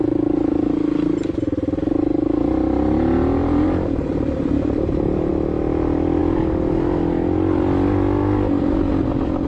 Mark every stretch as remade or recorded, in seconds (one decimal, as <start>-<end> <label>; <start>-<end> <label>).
0.0-3.4 recorded; 3.4-5.3 remade; 5.3-9.5 recorded